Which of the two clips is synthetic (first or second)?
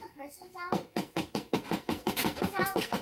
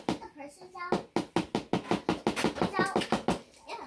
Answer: first